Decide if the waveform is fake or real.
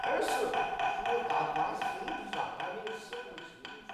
real